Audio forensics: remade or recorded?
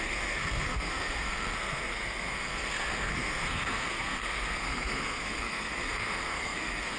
remade